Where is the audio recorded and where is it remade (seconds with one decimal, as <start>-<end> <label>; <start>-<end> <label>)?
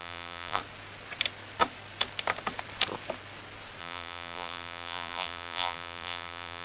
0.0-0.6 remade; 0.6-3.8 recorded; 3.8-6.6 remade